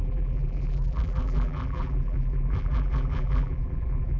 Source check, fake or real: fake